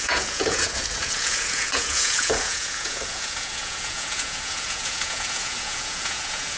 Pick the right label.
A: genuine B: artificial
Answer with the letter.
B